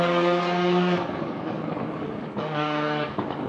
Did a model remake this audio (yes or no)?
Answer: yes